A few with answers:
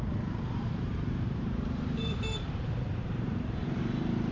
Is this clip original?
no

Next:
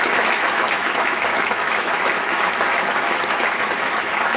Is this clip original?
no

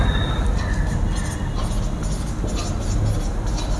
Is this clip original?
yes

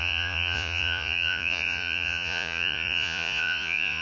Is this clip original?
no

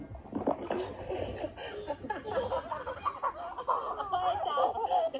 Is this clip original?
yes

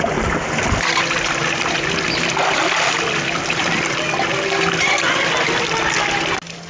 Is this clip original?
yes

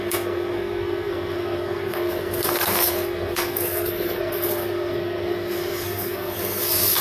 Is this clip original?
no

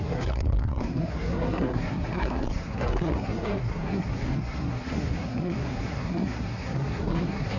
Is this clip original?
no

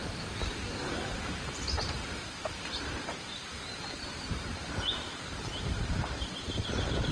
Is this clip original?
no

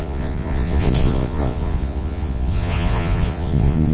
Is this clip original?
no